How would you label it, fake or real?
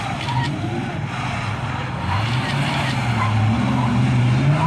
real